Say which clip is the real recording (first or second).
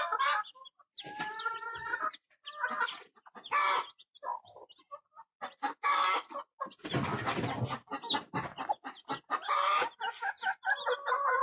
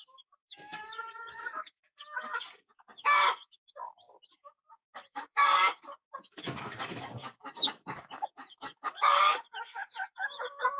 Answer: first